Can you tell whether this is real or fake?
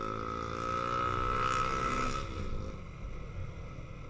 real